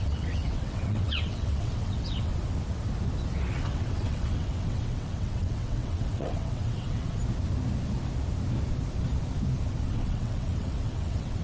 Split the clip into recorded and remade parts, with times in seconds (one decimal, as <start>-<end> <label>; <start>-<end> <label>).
0.0-2.3 remade; 2.3-3.6 recorded; 3.6-7.2 remade; 7.2-9.9 recorded; 9.9-11.4 remade